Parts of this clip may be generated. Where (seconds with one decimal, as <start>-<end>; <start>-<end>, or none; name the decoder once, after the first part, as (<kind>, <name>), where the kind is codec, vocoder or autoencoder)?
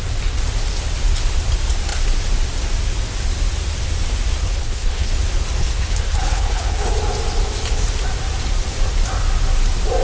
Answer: 4.4-5.1 (codec, HILCodec); 5.6-6.9